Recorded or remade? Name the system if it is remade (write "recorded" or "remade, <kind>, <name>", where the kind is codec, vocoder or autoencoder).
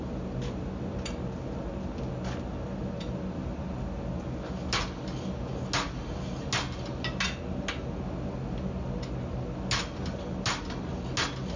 recorded